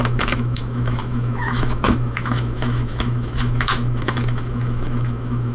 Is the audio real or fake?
fake